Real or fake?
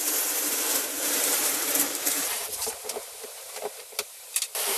fake